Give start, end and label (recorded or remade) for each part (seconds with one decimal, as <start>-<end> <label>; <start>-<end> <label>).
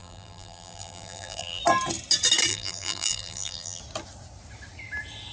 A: 0.0-1.6 remade; 1.6-2.5 recorded; 2.5-3.8 remade; 3.8-5.3 recorded